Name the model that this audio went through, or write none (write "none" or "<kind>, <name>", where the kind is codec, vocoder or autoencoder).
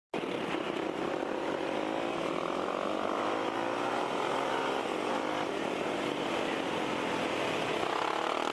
none